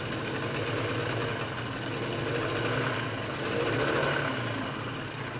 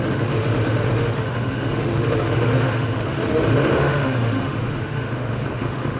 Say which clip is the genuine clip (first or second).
first